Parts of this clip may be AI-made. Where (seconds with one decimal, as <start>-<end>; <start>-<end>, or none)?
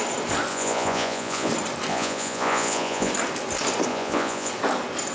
0.5-1.5; 1.9-3.1; 3.9-4.5